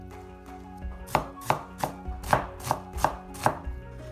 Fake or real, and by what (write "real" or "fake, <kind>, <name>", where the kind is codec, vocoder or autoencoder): real